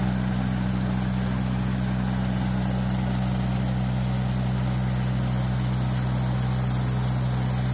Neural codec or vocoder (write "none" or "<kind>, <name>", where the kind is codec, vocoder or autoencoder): none